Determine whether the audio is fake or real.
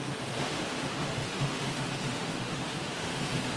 fake